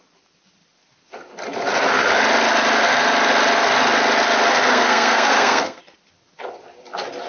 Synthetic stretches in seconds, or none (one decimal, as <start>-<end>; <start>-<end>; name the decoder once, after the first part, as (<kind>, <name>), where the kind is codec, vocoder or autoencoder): 4.7-5.8 (codec, SNAC)